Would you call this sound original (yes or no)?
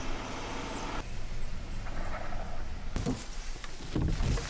yes